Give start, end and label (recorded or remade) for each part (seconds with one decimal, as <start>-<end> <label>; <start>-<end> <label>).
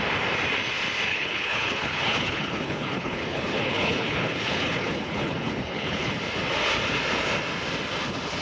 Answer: 0.0-1.1 recorded; 1.1-6.1 remade; 6.1-8.4 recorded